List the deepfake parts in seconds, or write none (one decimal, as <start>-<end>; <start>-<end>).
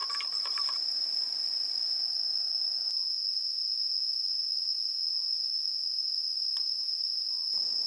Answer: 0.0-1.9; 6.3-6.8